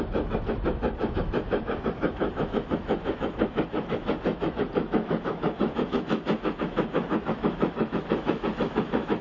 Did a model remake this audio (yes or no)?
yes